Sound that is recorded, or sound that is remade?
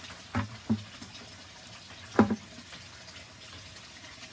recorded